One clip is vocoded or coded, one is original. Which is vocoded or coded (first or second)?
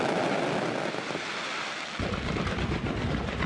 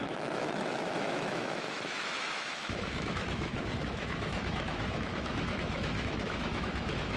second